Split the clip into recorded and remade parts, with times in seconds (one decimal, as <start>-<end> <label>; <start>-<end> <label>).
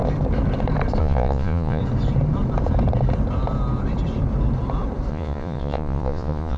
0.0-1.0 recorded; 1.0-1.8 remade; 1.8-5.1 recorded; 5.1-6.6 remade